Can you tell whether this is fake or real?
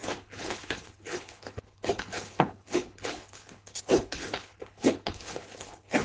fake